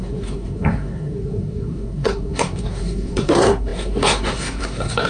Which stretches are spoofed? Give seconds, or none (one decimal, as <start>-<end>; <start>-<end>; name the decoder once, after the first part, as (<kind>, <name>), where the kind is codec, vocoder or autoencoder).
0.0-5.1 (codec, SNAC)

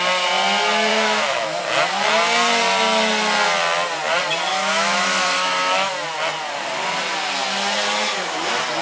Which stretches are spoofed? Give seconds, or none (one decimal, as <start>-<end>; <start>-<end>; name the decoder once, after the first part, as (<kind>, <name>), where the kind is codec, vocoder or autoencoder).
0.9-1.6 (autoencoder, DAC-VAE); 4.5-5.9